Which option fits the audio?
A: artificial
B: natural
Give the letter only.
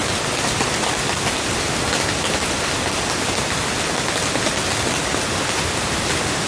B